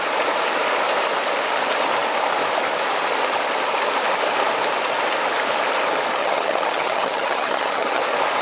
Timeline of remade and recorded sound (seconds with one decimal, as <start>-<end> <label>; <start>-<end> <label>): 0.0-6.2 recorded; 6.2-8.0 remade; 8.0-8.4 recorded